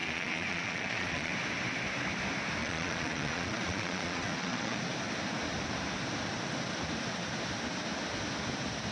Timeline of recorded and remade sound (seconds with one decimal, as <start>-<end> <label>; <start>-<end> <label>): 0.0-1.3 remade; 1.3-2.6 recorded; 2.6-4.8 remade; 4.8-8.9 recorded